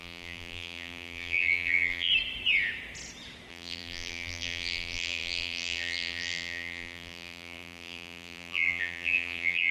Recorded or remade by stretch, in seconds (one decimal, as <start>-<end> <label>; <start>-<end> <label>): 0.0-2.1 remade; 2.1-3.5 recorded; 3.5-9.7 remade